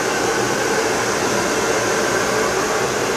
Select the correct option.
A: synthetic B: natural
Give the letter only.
B